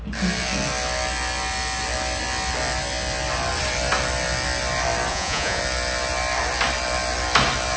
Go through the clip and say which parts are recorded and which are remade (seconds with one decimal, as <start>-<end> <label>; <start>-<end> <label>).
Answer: 0.0-5.1 recorded; 5.1-5.6 remade; 5.6-7.8 recorded